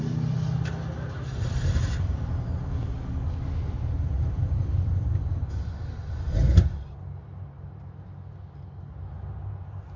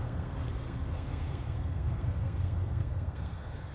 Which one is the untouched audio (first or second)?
first